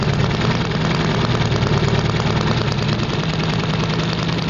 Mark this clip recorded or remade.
recorded